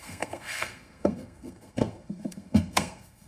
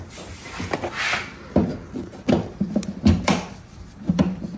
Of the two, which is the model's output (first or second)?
first